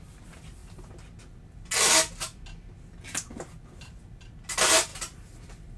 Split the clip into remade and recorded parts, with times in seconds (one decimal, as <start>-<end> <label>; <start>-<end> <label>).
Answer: 0.0-5.8 recorded